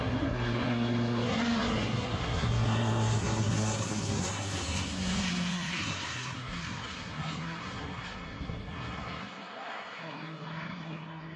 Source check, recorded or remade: remade